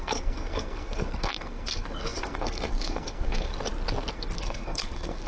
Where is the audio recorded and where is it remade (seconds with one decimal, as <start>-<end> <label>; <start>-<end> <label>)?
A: 0.0-3.5 remade; 3.5-4.1 recorded; 4.1-5.3 remade